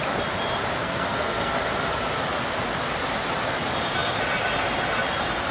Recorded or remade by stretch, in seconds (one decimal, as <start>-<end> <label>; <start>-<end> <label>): 0.0-0.8 recorded; 0.8-1.5 remade; 1.5-5.5 recorded